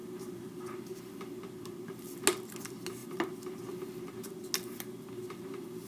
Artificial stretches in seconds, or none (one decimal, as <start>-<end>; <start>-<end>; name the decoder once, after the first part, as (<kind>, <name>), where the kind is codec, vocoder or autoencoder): none